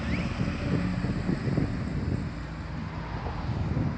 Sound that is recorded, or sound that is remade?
recorded